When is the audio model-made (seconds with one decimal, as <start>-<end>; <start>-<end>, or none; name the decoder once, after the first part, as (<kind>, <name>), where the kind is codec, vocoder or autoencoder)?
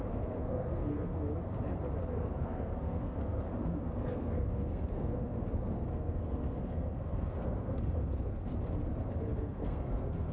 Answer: 0.0-1.1 (codec, SNAC); 2.1-8.5; 9.1-10.3